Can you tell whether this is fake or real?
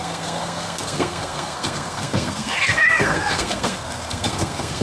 fake